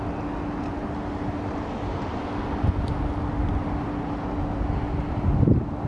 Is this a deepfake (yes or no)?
no